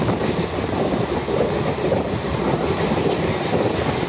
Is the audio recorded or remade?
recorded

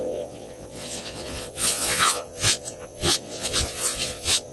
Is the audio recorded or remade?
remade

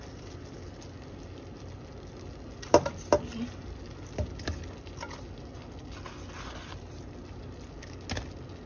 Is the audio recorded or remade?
recorded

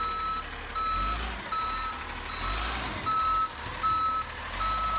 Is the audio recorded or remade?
recorded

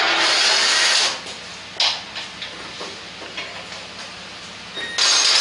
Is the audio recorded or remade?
recorded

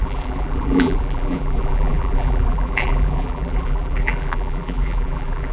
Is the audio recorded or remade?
remade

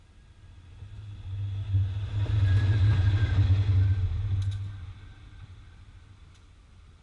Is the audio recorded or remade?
recorded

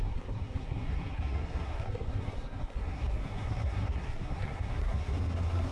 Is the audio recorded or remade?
remade